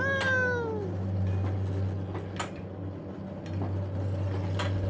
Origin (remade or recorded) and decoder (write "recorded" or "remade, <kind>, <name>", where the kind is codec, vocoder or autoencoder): recorded